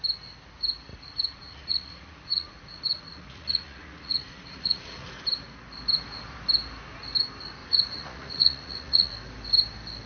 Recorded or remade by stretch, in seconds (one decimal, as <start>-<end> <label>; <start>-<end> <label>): 0.0-0.9 recorded; 0.9-5.1 remade; 5.1-7.6 recorded; 7.6-9.1 remade; 9.1-10.1 recorded